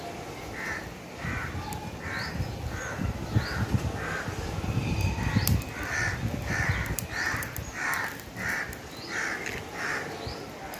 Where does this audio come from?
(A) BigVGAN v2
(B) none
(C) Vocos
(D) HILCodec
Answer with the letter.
A